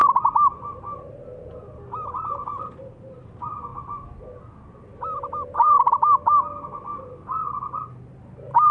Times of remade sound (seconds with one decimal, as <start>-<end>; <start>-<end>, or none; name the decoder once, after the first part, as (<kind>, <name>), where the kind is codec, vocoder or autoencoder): none